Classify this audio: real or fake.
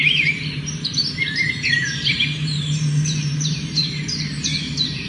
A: fake